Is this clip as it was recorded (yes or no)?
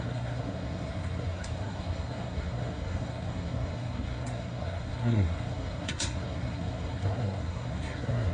no